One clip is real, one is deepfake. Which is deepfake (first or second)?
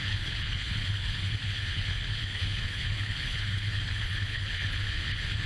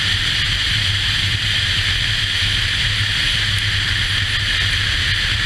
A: first